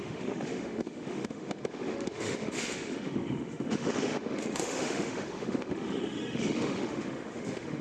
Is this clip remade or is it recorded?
remade